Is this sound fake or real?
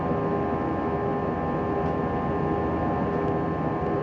real